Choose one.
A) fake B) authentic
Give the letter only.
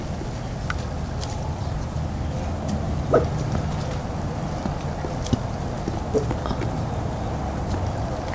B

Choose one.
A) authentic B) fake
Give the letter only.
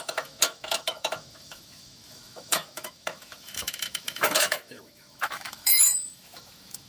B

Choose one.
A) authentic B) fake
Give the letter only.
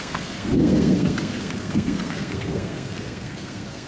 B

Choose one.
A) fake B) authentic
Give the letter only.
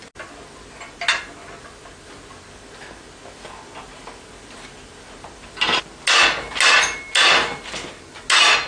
B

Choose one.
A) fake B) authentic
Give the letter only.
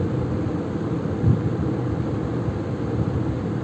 B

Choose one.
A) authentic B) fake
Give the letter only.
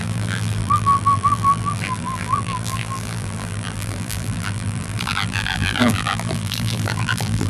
B